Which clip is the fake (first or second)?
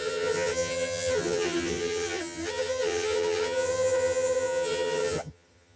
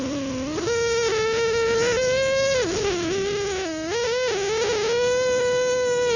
first